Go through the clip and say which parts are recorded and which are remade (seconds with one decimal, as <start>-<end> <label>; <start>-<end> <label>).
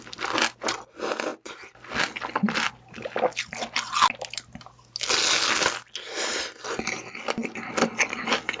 0.0-8.6 recorded